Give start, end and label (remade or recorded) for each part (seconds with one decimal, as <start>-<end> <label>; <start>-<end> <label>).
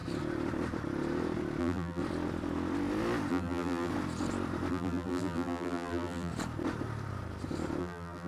0.0-1.6 recorded; 1.6-2.0 remade; 2.0-3.3 recorded; 3.3-3.9 remade; 3.9-4.7 recorded; 4.7-6.3 remade; 6.3-7.8 recorded; 7.8-8.3 remade